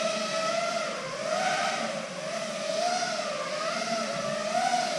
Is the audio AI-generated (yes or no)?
yes